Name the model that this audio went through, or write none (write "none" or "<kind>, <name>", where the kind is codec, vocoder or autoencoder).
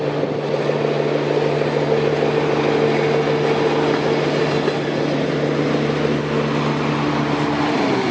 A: none